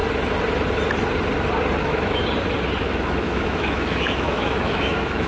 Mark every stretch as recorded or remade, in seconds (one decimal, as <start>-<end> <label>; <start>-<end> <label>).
0.0-1.8 recorded; 1.8-2.2 remade; 2.2-2.8 recorded; 2.8-5.3 remade